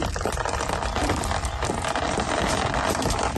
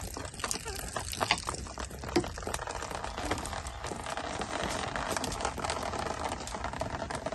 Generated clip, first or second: first